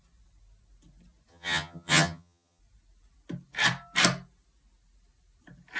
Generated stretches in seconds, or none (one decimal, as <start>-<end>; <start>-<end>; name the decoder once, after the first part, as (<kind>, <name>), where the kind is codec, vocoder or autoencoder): 1.3-2.6 (vocoder, HiFi-GAN)